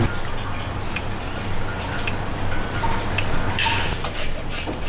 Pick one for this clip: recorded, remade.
recorded